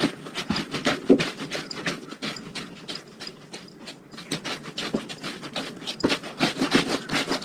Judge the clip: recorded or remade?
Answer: recorded